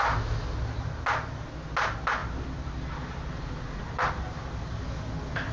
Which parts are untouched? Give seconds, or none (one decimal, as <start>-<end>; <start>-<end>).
0.0-5.5